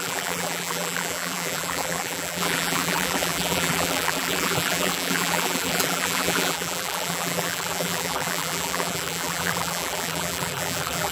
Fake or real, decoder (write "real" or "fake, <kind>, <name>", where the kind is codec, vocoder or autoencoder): fake, vocoder, BigVGAN v2